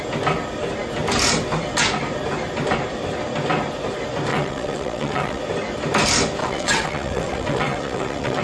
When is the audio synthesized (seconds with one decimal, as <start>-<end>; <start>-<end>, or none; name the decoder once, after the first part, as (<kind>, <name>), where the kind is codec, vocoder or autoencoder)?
4.3-5.4 (vocoder, WaveNeXt); 6.4-8.4